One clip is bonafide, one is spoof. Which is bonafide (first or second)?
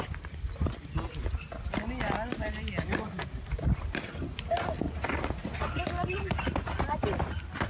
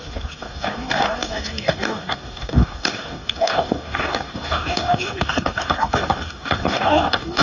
first